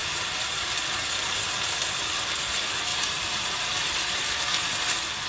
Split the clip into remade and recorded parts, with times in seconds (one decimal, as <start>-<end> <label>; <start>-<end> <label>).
0.0-5.3 recorded

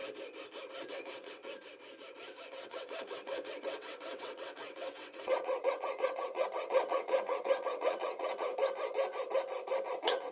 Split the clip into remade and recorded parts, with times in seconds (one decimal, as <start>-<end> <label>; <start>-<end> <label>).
0.0-0.9 recorded; 0.9-1.4 remade; 1.4-2.5 recorded; 2.5-8.5 remade; 8.5-9.9 recorded; 9.9-10.3 remade

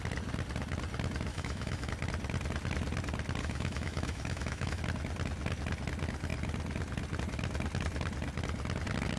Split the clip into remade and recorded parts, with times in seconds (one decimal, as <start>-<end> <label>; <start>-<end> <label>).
0.0-1.3 recorded; 1.3-1.9 remade; 1.9-3.4 recorded; 3.4-4.8 remade; 4.8-9.2 recorded

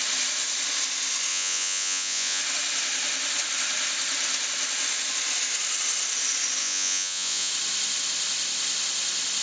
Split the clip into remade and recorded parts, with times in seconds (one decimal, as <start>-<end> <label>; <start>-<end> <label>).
0.0-1.3 recorded; 1.3-2.4 remade; 2.4-6.6 recorded; 6.6-7.5 remade; 7.5-9.4 recorded

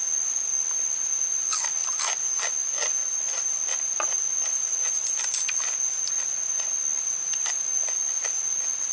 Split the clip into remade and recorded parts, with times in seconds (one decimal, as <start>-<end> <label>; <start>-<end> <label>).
0.0-8.9 recorded

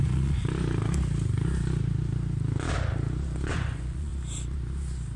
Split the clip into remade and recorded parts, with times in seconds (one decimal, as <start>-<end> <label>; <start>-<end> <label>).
0.0-0.4 remade; 0.4-3.5 recorded; 3.5-4.1 remade; 4.1-5.2 recorded